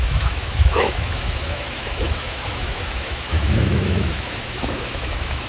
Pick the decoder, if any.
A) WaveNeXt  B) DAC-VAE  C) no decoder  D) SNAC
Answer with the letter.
B